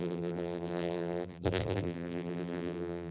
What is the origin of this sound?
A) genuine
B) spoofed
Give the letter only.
B